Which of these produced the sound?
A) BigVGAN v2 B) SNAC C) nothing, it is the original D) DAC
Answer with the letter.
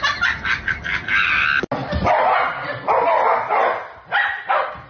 C